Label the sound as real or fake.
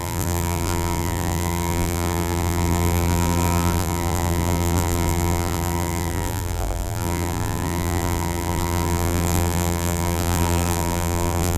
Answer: fake